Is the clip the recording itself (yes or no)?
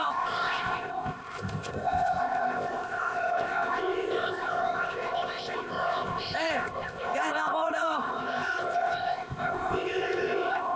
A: no